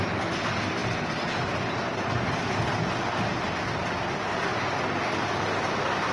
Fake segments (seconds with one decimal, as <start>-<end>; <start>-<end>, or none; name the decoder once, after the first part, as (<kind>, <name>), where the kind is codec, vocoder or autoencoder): none